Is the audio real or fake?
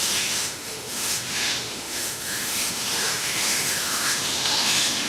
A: fake